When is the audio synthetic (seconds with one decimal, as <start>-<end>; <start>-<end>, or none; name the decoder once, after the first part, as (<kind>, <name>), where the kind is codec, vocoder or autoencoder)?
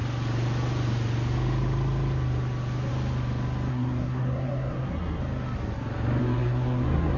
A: 3.7-5.2 (codec, SNAC); 6.2-7.2